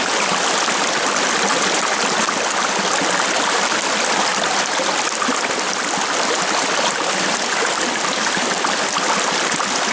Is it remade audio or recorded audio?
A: recorded